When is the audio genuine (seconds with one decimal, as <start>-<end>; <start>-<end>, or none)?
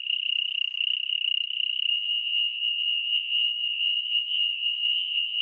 0.0-1.9